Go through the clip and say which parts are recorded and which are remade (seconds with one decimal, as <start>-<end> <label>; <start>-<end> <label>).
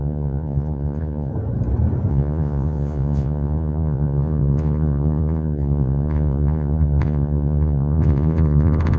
0.0-1.3 remade; 1.3-2.1 recorded; 2.1-9.0 remade